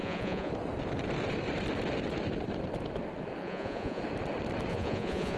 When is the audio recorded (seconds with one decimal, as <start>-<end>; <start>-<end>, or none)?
0.5-3.4; 4.0-4.7